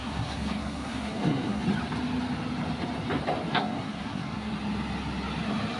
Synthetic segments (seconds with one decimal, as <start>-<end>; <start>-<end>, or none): 0.0-1.6; 3.5-4.5